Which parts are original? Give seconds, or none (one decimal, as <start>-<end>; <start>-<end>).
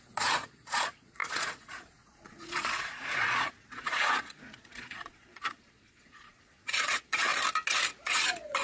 7.3-8.0